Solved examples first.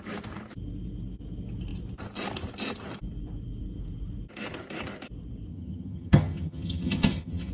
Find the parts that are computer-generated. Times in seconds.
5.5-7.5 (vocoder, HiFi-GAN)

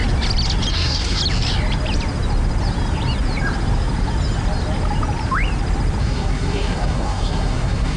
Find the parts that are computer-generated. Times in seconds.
0.7-1.2 (codec, SNAC); 6.0-8.0

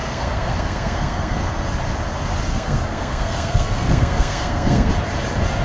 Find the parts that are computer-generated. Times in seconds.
0.0-1.5 (codec, SNAC); 2.5-4.9

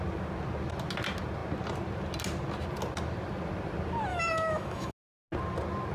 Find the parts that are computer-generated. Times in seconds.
4.1-4.9 (autoencoder, DAC-VAE)

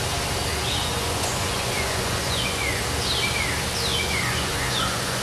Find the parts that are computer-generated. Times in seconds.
0.5-2.8 (vocoder, Vocos); 3.9-5.2

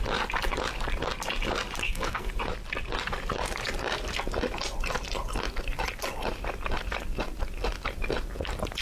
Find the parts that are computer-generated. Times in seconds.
1.8-2.3 (codec, SNAC)